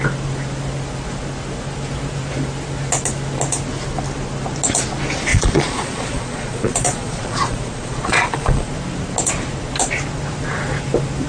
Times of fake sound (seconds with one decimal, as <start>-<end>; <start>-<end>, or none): 5.3-8.7